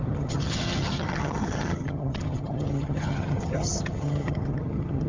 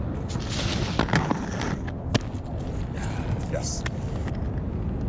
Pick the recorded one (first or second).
second